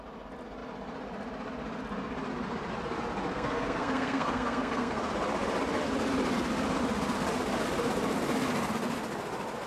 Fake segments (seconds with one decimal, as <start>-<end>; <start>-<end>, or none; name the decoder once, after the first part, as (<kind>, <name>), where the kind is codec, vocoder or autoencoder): 3.3-5.0 (codec, SNAC)